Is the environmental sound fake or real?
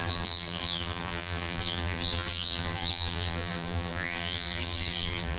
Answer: fake